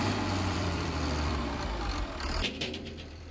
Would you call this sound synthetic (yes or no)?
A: yes